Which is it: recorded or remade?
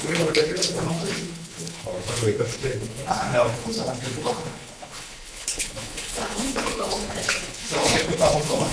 remade